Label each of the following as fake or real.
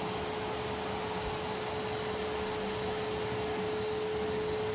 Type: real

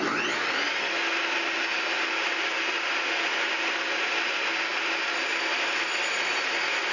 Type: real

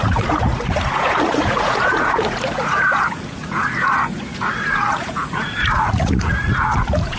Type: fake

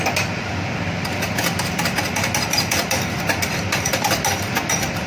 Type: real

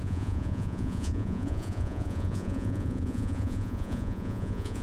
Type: fake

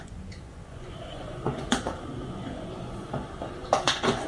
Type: fake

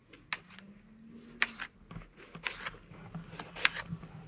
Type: real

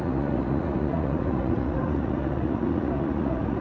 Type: fake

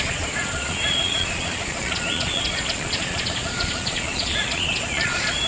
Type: fake